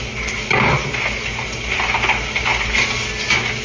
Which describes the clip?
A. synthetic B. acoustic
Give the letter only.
B